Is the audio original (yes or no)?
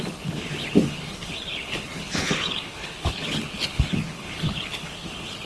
no